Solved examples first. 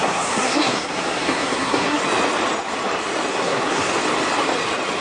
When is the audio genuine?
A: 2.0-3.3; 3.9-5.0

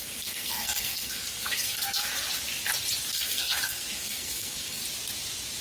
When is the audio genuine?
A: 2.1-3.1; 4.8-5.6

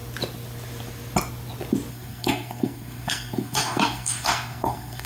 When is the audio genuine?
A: 0.0-1.9

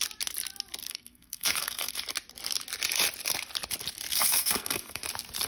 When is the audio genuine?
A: 0.0-0.8; 1.9-4.1; 5.0-5.5

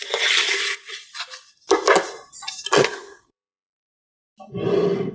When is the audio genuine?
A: 0.0-2.8; 4.0-5.1